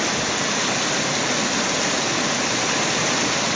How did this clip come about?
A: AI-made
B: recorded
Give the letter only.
B